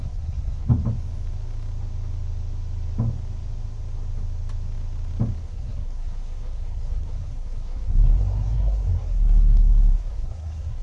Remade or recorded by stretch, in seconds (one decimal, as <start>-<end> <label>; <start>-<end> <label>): 0.0-0.8 remade; 0.8-5.4 recorded; 5.4-10.8 remade